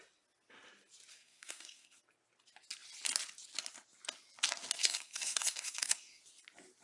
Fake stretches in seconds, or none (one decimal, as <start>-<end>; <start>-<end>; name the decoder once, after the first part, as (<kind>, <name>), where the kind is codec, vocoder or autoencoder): 1.1-2.0 (codec, SNAC); 4.8-6.2